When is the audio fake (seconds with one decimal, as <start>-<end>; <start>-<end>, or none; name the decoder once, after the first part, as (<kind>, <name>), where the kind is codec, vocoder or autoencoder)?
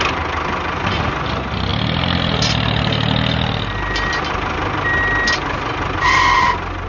none